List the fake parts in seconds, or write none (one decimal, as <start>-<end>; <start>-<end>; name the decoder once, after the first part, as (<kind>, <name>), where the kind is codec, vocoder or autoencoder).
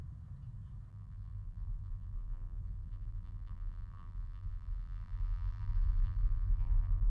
0.9-7.1 (vocoder, BigVGAN v2)